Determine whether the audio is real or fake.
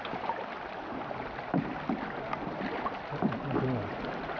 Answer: real